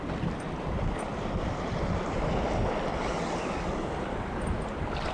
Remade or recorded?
recorded